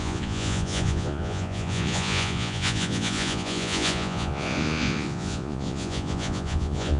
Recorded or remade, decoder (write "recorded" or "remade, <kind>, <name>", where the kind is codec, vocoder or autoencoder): remade, vocoder, Vocos